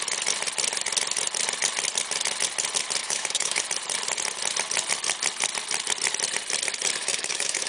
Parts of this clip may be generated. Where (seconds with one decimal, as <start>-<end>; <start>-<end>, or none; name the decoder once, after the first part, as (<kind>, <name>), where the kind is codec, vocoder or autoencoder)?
3.0-3.6 (autoencoder, DAC-VAE); 7.0-7.7